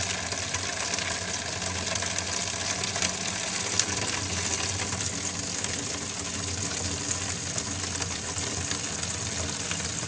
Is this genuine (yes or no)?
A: yes